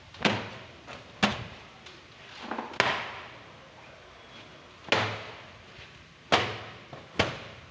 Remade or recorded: recorded